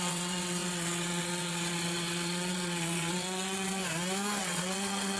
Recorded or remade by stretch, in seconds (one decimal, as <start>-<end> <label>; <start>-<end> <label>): 0.0-3.8 remade; 3.8-4.4 recorded; 4.4-5.2 remade